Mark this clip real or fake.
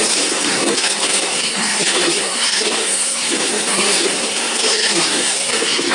fake